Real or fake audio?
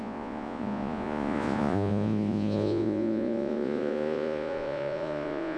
fake